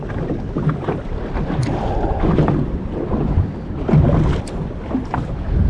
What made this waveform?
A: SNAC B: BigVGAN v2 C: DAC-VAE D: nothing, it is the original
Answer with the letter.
D